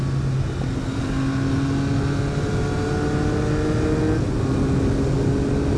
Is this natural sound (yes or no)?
yes